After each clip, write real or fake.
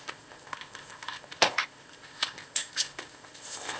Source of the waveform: fake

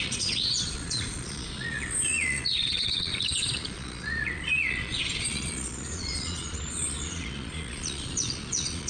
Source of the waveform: fake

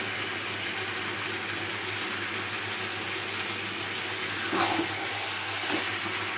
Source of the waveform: real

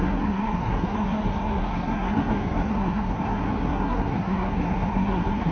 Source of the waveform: fake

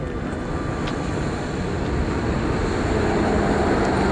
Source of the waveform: real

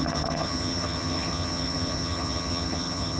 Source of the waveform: fake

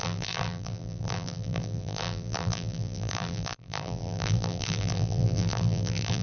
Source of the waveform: fake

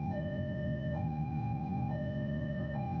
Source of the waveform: fake